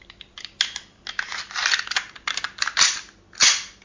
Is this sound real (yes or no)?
yes